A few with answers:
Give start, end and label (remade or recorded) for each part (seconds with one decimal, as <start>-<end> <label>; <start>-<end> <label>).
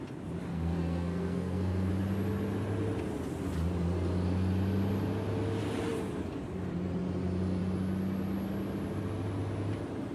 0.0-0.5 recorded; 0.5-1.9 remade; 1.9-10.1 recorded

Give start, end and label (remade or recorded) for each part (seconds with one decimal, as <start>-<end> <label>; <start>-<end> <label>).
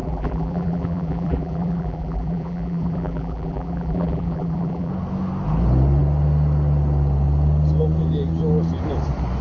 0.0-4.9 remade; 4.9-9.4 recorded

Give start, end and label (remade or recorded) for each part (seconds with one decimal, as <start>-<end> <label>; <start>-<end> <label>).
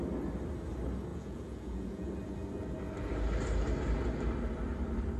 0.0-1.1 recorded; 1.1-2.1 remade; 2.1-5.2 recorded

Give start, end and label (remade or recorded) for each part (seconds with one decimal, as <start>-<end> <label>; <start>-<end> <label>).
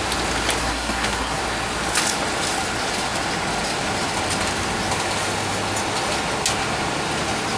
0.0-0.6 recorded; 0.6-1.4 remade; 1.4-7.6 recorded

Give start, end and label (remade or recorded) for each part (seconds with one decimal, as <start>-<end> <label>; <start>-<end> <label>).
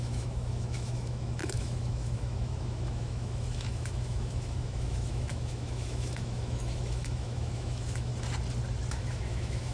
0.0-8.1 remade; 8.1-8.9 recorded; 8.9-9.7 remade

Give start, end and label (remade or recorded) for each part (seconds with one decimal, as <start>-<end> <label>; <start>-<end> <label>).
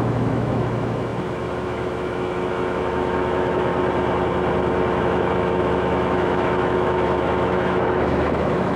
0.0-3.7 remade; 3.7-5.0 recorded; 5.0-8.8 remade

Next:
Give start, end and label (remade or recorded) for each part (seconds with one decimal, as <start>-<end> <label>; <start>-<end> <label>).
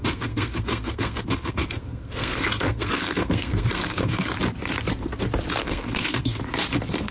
0.0-4.3 remade; 4.3-5.6 recorded; 5.6-6.4 remade; 6.4-7.1 recorded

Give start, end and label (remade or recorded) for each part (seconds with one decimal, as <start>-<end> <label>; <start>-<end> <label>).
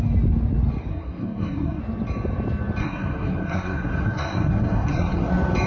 0.0-0.9 recorded; 0.9-1.8 remade; 1.8-2.8 recorded; 2.8-5.3 remade; 5.3-5.7 recorded